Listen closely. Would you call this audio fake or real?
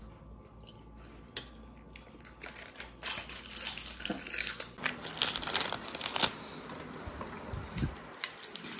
real